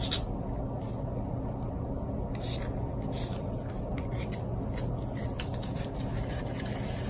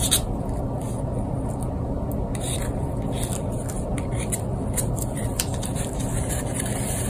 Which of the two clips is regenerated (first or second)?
second